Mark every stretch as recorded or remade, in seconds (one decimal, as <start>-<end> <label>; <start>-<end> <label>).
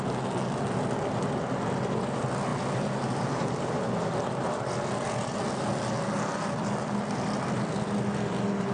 0.0-8.7 recorded